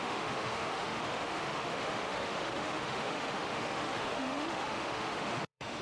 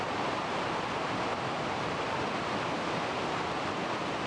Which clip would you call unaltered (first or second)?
second